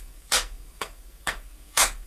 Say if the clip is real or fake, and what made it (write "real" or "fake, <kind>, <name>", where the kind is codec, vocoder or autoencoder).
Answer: fake, codec, SNAC